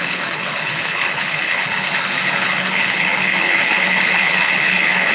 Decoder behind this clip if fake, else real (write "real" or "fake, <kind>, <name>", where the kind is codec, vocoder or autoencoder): fake, codec, HILCodec